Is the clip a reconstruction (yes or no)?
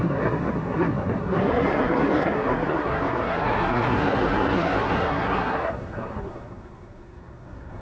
yes